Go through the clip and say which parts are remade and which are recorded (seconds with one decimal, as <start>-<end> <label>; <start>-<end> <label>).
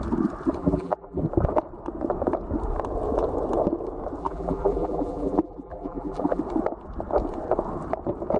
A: 0.0-0.6 recorded; 0.6-1.2 remade; 1.2-4.2 recorded; 4.2-6.4 remade; 6.4-8.4 recorded